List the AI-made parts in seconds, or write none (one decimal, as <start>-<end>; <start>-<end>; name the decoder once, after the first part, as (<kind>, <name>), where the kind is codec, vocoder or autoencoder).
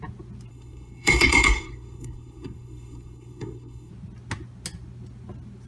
0.5-3.9 (codec, SNAC)